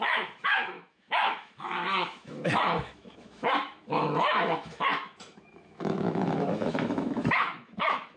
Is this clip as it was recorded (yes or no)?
no